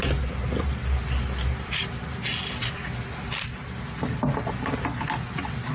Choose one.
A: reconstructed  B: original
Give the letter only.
B